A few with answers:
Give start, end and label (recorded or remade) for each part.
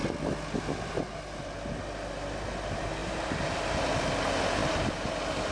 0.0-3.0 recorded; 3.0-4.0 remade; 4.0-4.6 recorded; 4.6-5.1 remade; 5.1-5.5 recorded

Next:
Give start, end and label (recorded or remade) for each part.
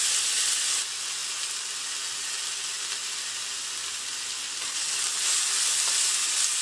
0.0-6.6 recorded